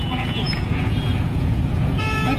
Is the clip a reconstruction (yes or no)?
yes